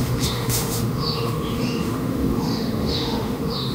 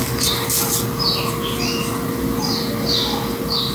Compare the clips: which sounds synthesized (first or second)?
first